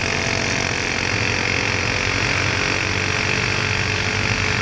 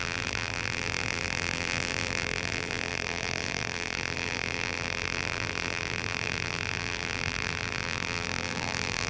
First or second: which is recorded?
first